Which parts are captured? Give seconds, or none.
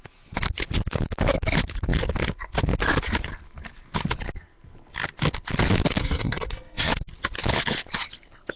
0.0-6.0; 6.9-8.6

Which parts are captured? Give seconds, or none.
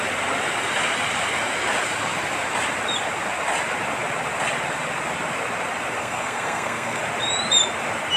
0.0-6.0; 7.0-8.2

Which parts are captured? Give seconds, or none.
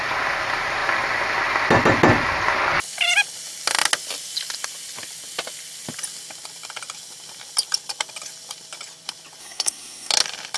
0.0-9.4; 10.1-10.6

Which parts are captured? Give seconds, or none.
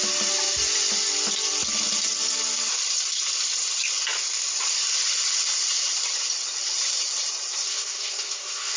0.0-7.6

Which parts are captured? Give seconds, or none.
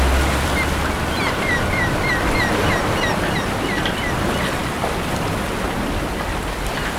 0.0-7.0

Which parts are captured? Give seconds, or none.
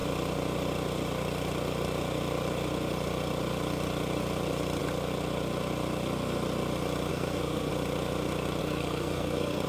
0.0-7.1; 7.7-8.6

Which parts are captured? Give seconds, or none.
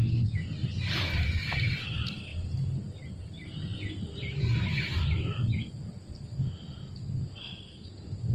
0.0-7.4; 7.9-8.3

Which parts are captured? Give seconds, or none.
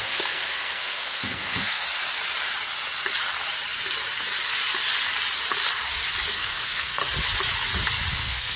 1.8-6.3; 7.0-8.1